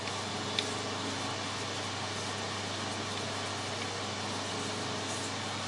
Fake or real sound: real